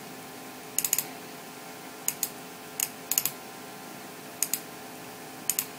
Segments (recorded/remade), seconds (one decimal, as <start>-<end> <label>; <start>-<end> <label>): 0.0-5.8 recorded